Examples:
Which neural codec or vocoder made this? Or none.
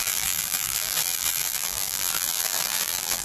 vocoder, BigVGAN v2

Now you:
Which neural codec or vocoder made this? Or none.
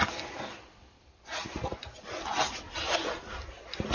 none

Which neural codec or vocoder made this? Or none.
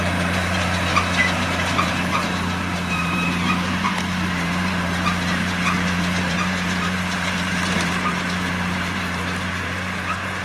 vocoder, BigVGAN v2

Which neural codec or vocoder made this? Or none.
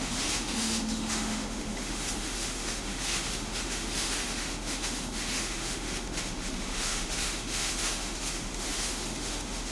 autoencoder, DAC-VAE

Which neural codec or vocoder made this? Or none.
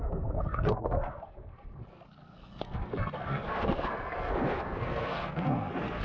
codec, SNAC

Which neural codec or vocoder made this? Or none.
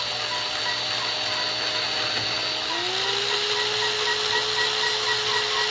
none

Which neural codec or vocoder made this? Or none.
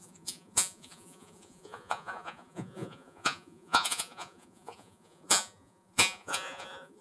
vocoder, Vocos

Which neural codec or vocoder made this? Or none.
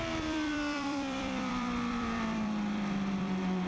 vocoder, BigVGAN v2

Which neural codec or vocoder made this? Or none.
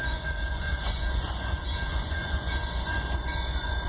vocoder, Vocos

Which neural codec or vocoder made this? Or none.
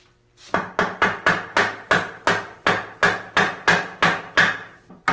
none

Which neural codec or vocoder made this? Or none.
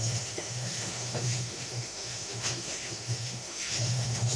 autoencoder, DAC-VAE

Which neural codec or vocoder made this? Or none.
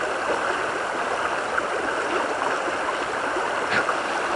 none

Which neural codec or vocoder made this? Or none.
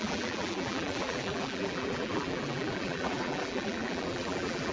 vocoder, BigVGAN v2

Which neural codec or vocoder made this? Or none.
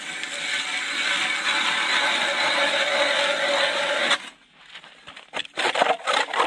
none